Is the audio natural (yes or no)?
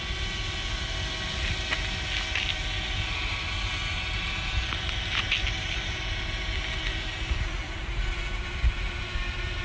yes